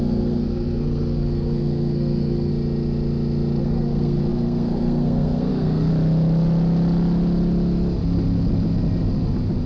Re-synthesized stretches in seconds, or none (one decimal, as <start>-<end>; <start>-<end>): 0.0-2.5; 3.6-5.9